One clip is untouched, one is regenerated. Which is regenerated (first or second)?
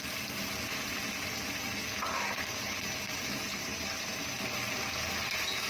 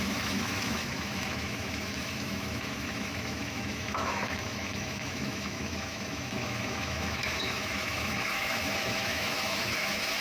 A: second